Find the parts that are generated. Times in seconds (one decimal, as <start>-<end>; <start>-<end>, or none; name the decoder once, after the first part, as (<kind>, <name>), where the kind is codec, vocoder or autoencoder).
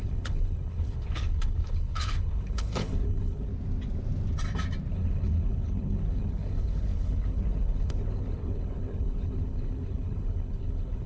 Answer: 0.0-3.5 (codec, HILCodec); 4.9-11.1